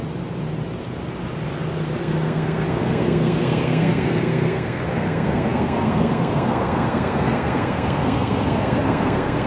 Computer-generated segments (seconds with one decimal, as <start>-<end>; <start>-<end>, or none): 2.0-9.5